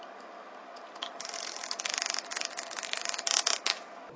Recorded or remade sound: recorded